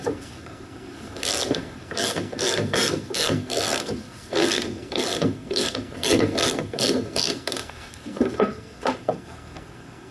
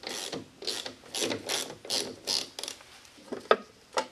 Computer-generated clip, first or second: first